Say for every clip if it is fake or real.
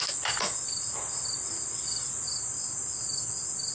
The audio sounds fake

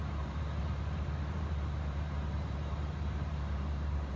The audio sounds fake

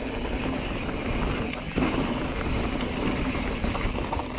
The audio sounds real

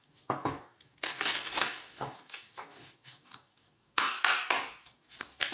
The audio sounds fake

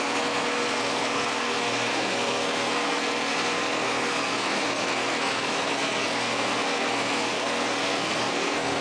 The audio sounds fake